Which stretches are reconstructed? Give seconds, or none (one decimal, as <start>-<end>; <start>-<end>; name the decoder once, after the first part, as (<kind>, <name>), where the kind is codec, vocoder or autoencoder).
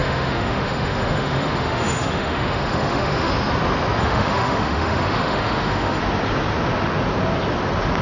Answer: 0.0-3.3 (autoencoder, DAC-VAE); 4.0-6.0